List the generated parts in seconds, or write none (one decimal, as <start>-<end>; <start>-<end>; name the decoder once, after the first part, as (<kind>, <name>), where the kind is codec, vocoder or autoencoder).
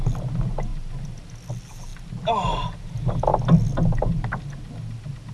none